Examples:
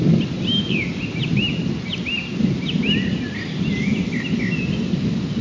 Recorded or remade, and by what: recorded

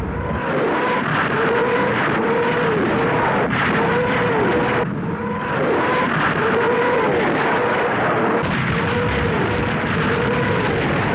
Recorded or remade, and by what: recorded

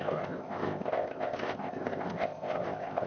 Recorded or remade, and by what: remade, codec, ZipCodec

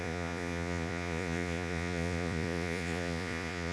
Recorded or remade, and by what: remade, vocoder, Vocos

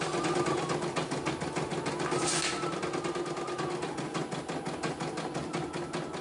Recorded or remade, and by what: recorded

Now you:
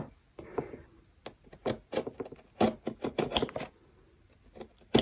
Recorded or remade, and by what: recorded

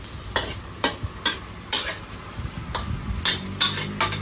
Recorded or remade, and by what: recorded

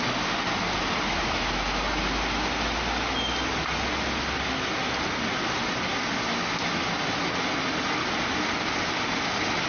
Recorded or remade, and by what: recorded